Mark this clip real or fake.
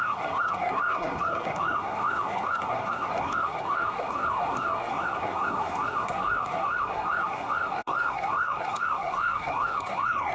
fake